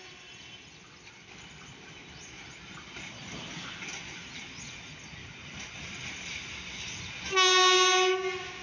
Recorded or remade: recorded